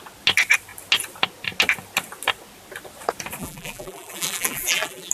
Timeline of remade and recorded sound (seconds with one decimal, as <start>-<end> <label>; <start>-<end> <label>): 0.0-3.4 recorded; 3.4-5.1 remade